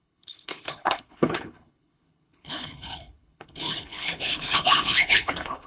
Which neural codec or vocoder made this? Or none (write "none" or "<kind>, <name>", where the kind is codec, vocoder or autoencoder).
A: codec, HILCodec